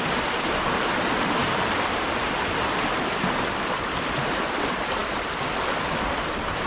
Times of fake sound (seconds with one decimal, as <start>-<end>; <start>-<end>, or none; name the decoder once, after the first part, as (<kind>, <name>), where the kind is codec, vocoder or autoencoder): none